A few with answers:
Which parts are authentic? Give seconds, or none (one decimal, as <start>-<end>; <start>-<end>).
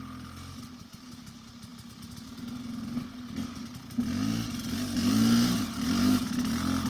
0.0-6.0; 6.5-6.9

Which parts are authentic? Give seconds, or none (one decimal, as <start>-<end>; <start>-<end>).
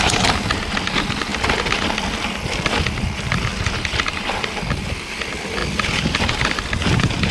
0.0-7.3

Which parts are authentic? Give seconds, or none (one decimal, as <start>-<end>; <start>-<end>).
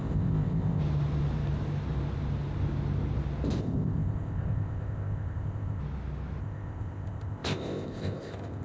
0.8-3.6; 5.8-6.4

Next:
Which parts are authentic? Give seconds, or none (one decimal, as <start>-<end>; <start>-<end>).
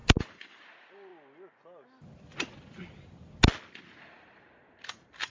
1.1-4.0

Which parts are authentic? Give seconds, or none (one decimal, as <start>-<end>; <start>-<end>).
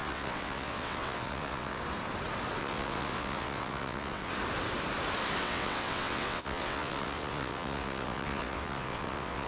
1.8-2.6; 4.3-5.4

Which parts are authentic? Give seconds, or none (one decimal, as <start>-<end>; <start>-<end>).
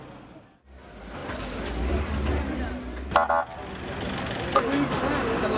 0.0-1.2; 2.7-5.6